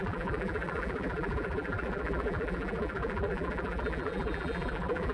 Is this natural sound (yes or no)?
no